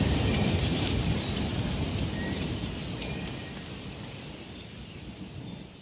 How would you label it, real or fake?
real